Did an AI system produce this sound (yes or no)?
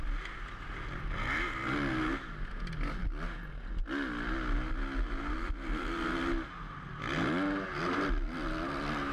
no